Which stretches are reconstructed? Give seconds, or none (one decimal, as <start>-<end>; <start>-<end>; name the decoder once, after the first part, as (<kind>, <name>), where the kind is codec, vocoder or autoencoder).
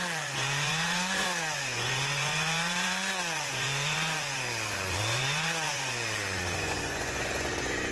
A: 0.0-7.9 (vocoder, Vocos)